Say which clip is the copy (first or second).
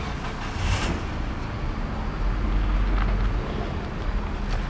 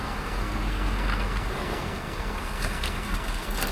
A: second